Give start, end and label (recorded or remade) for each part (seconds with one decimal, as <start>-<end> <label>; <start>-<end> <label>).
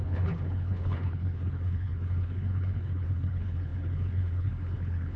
0.0-5.2 remade